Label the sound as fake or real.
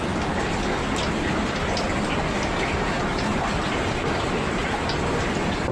real